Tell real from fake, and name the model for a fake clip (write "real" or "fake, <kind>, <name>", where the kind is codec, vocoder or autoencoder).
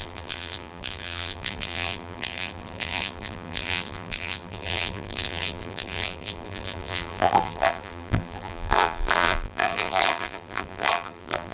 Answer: fake, vocoder, BigVGAN v2